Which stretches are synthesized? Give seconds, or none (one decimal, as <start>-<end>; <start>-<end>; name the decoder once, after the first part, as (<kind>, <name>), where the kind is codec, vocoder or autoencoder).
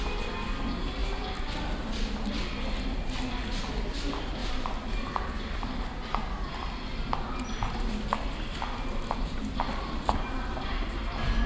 none